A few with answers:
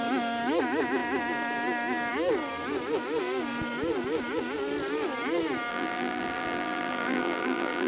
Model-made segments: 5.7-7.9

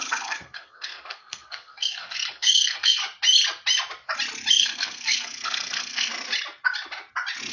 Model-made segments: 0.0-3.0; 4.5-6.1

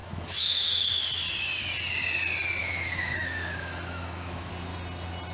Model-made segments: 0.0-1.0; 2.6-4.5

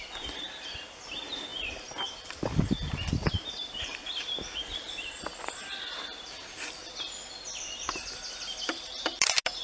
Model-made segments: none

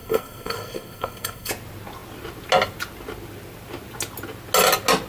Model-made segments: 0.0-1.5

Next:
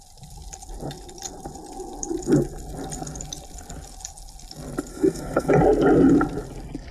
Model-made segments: 4.9-5.5

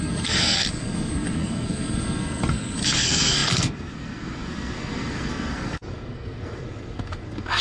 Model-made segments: 0.0-7.6

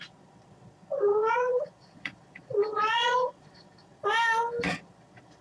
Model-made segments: 0.0-4.0; 4.7-5.4